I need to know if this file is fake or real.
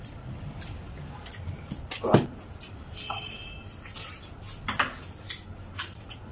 real